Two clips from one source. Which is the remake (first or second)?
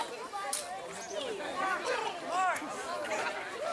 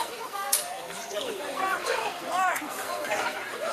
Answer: second